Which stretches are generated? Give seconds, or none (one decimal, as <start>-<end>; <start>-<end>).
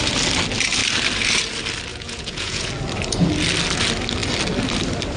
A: 1.9-2.7